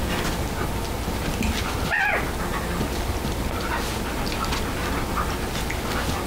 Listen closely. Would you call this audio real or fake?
real